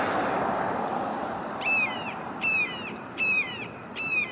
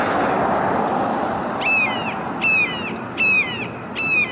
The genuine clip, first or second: second